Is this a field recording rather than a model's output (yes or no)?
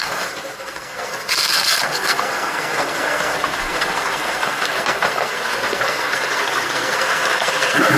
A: no